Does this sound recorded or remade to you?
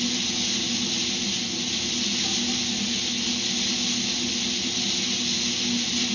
recorded